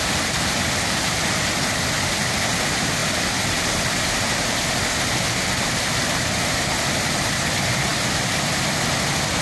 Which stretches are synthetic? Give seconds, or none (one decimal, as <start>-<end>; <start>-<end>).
3.0-6.4